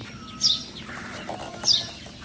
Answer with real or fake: real